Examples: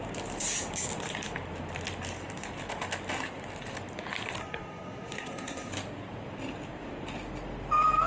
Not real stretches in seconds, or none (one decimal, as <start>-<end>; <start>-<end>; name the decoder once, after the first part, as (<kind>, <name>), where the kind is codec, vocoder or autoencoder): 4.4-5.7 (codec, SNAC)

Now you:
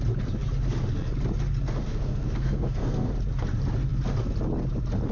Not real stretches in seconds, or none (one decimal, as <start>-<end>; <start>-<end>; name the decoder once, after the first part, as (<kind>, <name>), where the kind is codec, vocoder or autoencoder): 1.8-3.1 (codec, SNAC)

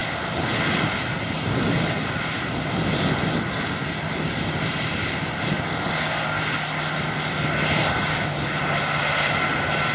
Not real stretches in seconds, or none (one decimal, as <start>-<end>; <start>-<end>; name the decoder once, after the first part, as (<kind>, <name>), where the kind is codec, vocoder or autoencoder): none

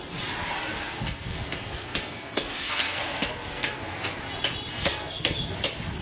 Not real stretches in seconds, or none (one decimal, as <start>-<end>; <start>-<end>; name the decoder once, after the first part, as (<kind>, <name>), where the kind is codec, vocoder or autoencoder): 0.7-4.1 (codec, SNAC); 4.7-5.4

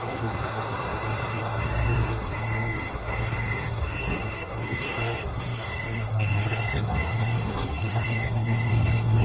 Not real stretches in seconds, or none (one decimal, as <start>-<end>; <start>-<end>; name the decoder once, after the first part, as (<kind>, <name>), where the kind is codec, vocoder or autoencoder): 0.0-9.2 (codec, SNAC)

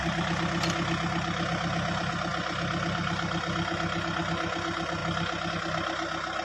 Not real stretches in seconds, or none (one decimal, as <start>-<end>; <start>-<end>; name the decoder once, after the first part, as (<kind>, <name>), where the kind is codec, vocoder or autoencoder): none